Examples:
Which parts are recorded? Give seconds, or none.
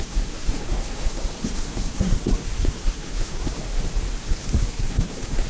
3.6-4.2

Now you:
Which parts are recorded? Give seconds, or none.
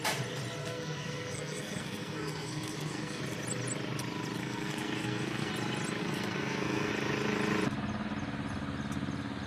0.0-0.6; 3.2-4.4; 5.5-6.0; 6.9-9.5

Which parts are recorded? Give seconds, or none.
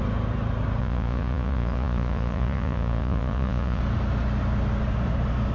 0.0-0.8; 3.8-5.5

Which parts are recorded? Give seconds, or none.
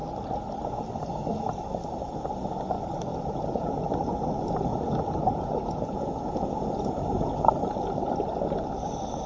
0.0-3.1; 3.9-4.7; 7.3-9.3